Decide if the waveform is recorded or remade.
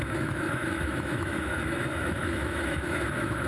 remade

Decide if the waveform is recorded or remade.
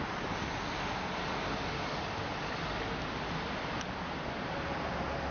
recorded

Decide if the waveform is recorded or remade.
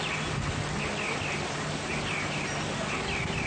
recorded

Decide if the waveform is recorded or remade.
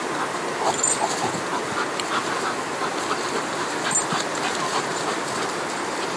recorded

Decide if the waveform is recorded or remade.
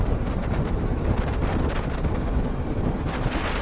recorded